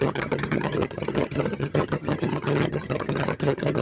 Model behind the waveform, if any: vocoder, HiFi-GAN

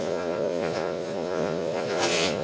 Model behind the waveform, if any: vocoder, Vocos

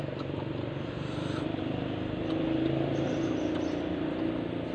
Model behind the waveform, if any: none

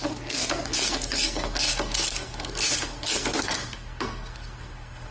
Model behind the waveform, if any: codec, SNAC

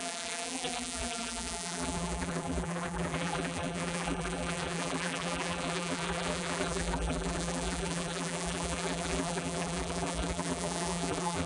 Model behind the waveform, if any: vocoder, BigVGAN v2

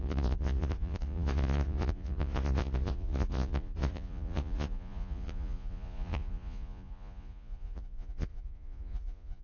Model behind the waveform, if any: vocoder, Vocos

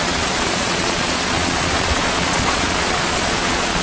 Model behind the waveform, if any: vocoder, Vocos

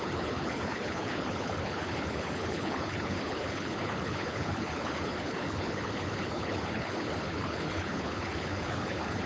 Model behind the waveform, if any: codec, HILCodec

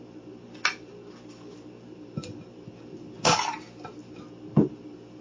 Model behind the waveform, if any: none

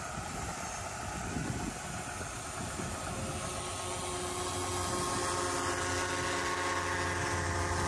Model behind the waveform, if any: none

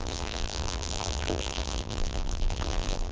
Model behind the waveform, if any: vocoder, BigVGAN v2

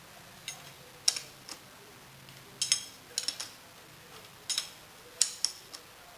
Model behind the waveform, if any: none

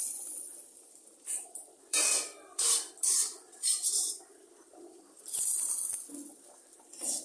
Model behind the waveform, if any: vocoder, BigVGAN v2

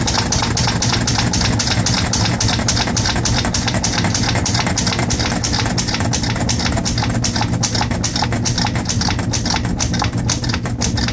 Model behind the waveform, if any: none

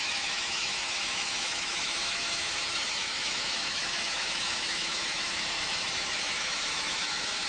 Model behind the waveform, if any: autoencoder, DAC-VAE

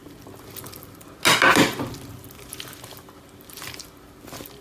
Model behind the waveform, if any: none